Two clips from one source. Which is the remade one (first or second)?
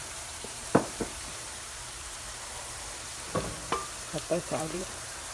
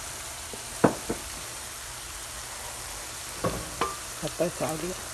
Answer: first